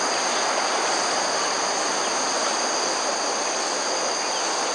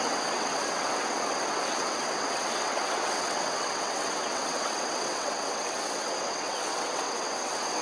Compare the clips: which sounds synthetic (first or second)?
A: second